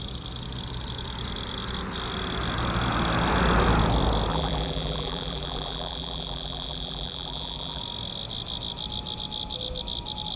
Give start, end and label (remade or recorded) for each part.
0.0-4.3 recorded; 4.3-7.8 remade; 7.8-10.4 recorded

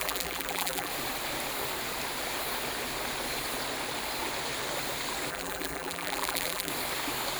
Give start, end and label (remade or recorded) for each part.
0.0-0.9 remade; 0.9-5.3 recorded; 5.3-6.7 remade; 6.7-7.4 recorded